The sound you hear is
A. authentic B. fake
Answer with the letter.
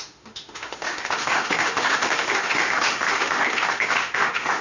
B